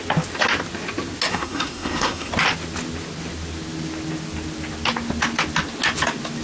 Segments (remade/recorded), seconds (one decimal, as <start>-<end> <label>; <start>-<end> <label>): 0.0-1.3 recorded; 1.3-2.3 remade; 2.3-6.4 recorded